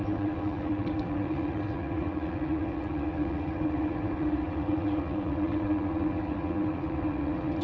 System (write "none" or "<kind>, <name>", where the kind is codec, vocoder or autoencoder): vocoder, WaveNeXt